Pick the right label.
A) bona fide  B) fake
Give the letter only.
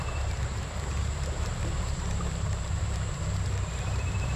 B